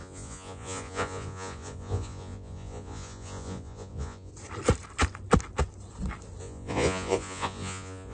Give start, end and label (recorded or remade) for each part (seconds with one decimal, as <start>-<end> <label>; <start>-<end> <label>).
0.0-4.3 remade; 4.3-6.4 recorded; 6.4-8.1 remade